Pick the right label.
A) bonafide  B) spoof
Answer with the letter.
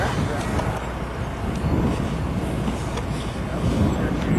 A